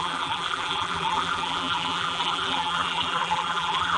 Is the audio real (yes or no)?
no